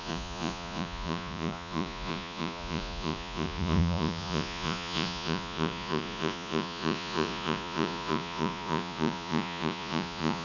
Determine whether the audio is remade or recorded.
remade